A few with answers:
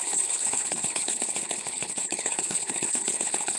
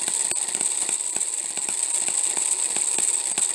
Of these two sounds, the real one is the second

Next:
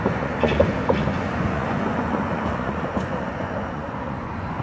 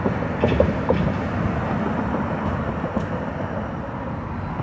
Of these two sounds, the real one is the second